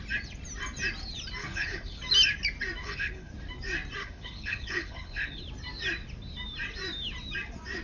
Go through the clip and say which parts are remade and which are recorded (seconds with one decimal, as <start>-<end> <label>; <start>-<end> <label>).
0.0-1.4 recorded; 1.4-2.0 remade; 2.0-2.8 recorded; 2.8-3.3 remade; 3.3-4.0 recorded; 4.0-5.4 remade; 5.4-7.8 recorded